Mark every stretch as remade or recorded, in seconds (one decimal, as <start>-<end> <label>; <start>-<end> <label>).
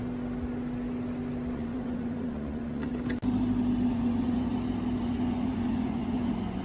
0.0-1.5 recorded; 1.5-2.9 remade; 2.9-3.9 recorded; 3.9-4.5 remade; 4.5-5.0 recorded; 5.0-6.6 remade